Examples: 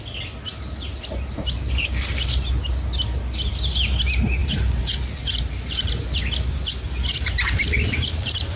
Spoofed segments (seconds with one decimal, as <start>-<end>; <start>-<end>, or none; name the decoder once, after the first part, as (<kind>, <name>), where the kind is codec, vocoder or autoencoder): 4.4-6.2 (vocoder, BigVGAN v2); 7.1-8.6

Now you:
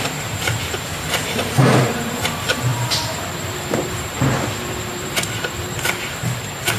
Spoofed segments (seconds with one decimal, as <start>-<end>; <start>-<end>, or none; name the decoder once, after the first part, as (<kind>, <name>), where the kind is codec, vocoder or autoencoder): 0.0-6.8 (vocoder, BigVGAN v2)

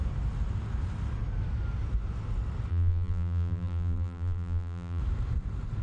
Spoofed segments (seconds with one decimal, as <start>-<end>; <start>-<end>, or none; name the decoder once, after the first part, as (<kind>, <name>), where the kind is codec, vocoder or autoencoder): 2.7-5.0 (vocoder, BigVGAN v2)

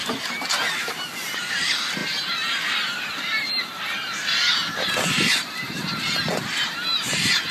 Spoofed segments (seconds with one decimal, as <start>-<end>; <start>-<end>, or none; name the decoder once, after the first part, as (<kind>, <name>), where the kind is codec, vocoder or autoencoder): 0.8-7.5 (vocoder, BigVGAN v2)

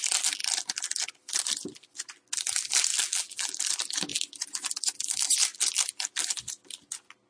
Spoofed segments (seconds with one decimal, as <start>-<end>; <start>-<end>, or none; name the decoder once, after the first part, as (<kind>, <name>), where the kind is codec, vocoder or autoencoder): 2.9-3.6 (vocoder, BigVGAN v2)

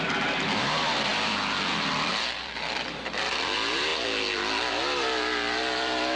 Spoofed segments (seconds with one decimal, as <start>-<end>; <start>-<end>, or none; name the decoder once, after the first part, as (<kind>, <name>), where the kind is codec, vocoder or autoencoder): 0.0-3.9 (vocoder, BigVGAN v2); 4.7-6.2